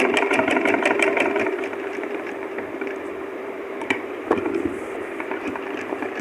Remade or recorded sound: remade